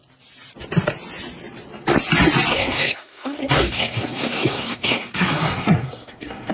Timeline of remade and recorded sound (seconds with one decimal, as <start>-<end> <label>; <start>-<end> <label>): 0.0-2.5 recorded; 2.5-6.5 remade